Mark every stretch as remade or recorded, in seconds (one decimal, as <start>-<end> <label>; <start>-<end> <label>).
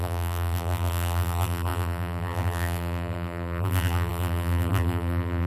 0.0-5.5 remade